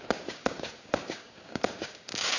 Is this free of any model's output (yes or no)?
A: no